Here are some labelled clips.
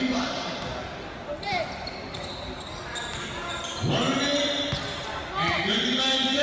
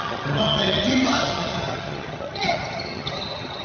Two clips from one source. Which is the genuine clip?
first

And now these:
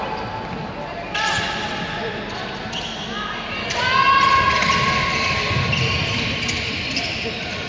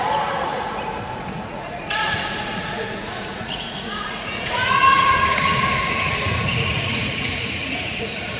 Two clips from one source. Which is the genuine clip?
first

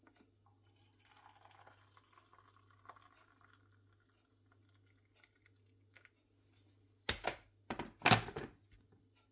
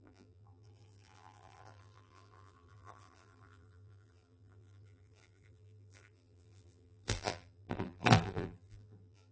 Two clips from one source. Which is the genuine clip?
first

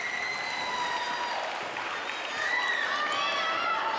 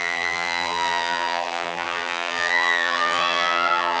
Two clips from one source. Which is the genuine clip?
first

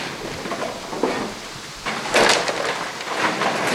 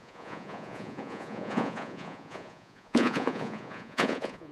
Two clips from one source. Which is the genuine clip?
first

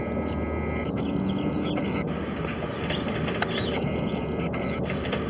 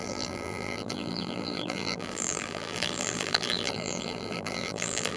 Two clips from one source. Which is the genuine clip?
first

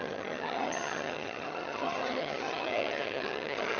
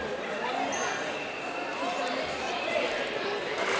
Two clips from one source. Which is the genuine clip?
second